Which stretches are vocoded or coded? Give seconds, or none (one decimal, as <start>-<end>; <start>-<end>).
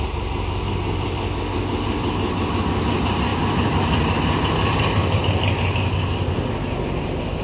3.3-5.2